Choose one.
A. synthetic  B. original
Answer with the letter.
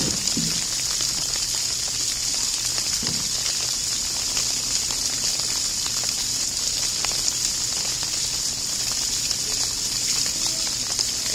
B